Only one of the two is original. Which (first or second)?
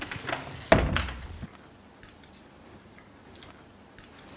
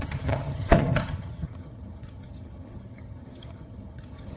first